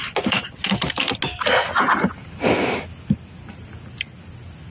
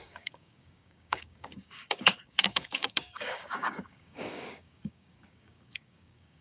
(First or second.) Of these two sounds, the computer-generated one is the second